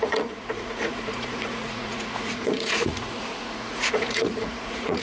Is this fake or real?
fake